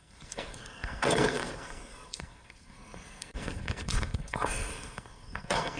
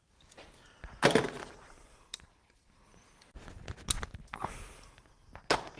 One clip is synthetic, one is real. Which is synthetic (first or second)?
first